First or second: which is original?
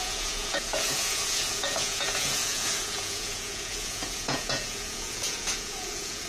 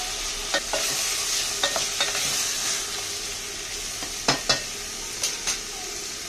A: second